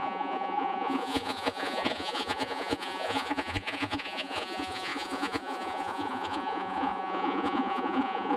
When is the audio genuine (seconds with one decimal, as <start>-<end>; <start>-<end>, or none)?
none